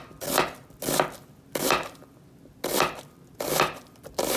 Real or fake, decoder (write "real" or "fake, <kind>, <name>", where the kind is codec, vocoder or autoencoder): real